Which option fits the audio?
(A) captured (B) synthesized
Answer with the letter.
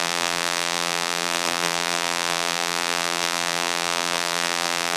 B